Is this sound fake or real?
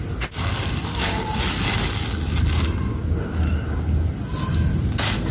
real